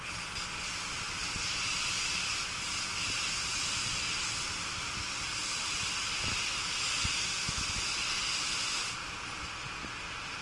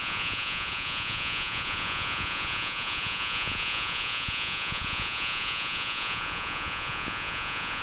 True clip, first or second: first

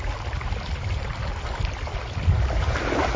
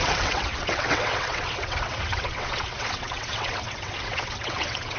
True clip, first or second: first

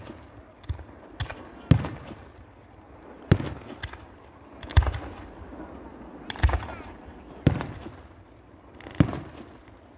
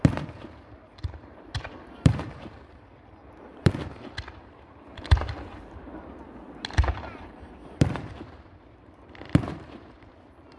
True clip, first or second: first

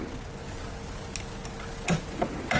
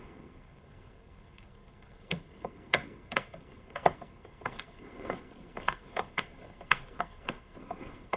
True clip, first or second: first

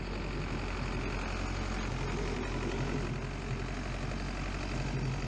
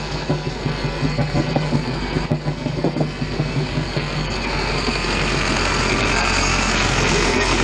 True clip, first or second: first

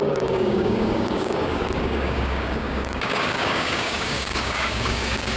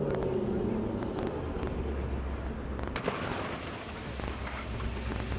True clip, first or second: second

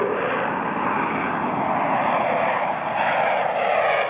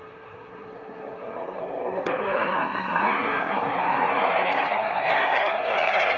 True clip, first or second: first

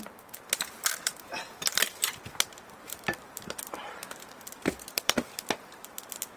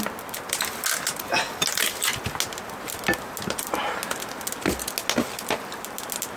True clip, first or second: second